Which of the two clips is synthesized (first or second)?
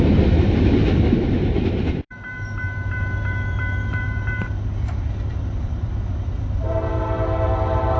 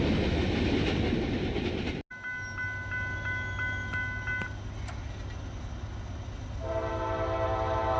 first